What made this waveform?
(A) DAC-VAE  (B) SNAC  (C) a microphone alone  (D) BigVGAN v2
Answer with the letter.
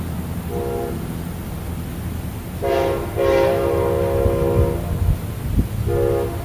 C